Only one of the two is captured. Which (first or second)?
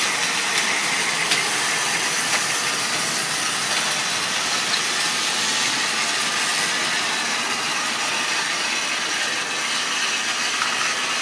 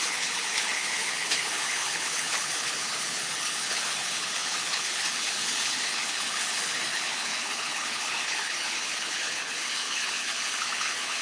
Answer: first